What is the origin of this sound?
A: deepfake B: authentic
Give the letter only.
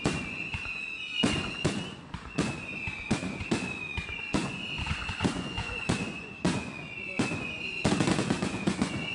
A